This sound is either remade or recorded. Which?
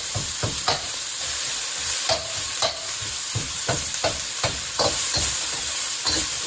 remade